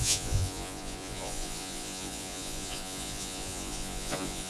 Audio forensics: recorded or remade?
remade